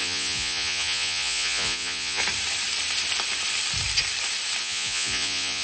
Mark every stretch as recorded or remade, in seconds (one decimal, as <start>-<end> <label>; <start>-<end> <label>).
0.0-2.2 remade; 2.2-4.6 recorded; 4.6-5.6 remade